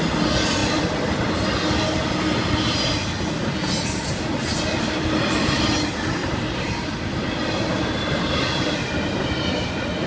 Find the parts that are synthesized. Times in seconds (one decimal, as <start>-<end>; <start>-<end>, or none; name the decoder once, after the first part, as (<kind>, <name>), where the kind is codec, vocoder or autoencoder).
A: 6.2-9.7 (vocoder, BigVGAN v2)

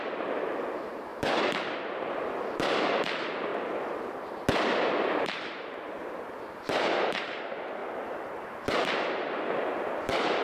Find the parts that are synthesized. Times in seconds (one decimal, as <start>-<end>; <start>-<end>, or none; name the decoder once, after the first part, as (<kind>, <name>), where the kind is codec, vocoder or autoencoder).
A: 0.0-3.5 (vocoder, BigVGAN v2); 5.1-7.8; 8.4-10.4